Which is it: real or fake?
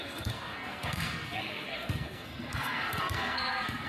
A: fake